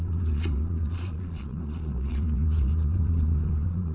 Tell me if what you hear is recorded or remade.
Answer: remade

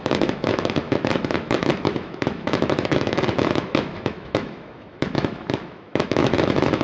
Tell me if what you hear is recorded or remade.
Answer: remade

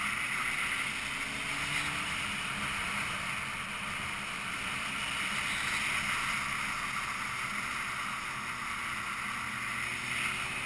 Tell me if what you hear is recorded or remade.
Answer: recorded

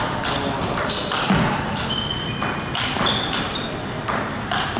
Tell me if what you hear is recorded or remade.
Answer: recorded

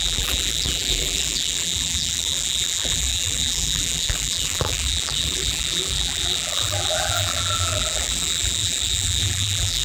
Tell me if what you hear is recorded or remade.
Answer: remade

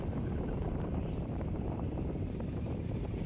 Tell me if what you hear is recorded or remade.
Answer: remade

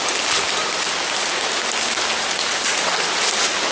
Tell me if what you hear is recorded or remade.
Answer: recorded